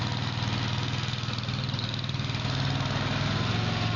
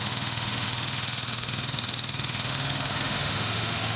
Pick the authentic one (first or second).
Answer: first